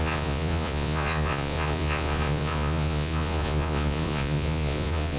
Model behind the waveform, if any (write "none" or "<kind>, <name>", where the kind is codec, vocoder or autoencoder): vocoder, Vocos